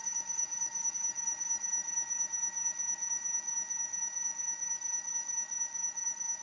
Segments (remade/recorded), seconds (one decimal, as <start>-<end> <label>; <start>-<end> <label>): 0.0-0.9 remade; 0.9-6.4 recorded